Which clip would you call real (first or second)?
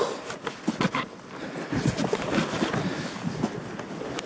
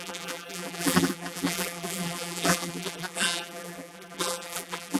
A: first